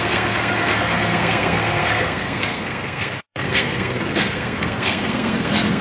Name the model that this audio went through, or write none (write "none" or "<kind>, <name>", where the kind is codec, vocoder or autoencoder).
codec, SNAC